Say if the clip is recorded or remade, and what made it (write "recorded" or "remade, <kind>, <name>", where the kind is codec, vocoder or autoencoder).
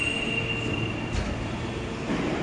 remade, vocoder, BigVGAN v2